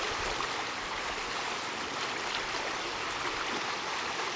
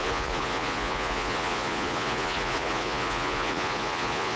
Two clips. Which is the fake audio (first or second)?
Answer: second